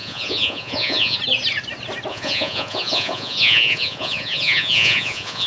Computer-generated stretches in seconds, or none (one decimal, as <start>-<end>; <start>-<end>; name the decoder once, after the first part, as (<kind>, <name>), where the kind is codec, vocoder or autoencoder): 0.0-1.2 (vocoder, Vocos); 2.1-5.5